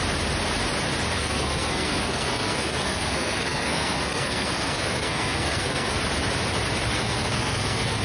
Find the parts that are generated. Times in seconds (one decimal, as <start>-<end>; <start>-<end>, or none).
1.1-5.9; 6.9-8.0